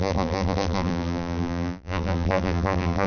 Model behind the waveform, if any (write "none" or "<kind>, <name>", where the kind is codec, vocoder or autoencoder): vocoder, BigVGAN v2